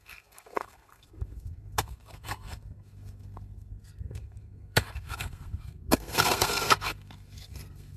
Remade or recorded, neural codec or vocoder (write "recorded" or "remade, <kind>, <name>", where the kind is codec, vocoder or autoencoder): remade, codec, SNAC